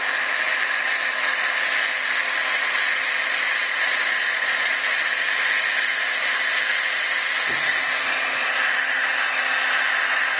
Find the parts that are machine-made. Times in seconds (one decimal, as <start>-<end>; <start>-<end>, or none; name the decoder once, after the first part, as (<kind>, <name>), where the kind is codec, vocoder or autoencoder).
3.6-4.8 (vocoder, Vocos)